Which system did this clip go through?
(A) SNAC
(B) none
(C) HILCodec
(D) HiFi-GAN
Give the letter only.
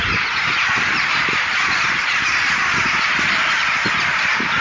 B